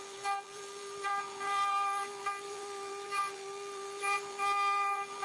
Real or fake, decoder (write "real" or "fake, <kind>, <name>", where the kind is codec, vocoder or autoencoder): fake, vocoder, BigVGAN v2